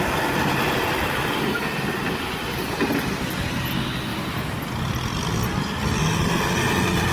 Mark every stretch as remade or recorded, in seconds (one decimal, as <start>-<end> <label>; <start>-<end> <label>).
0.0-7.1 recorded